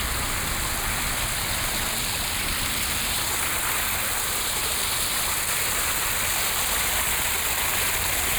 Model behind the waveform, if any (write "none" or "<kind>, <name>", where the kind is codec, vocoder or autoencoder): none